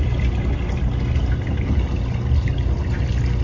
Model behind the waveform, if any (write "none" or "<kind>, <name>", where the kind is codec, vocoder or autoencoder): none